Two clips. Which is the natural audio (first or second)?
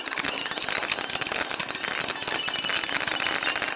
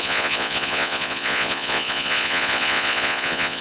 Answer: first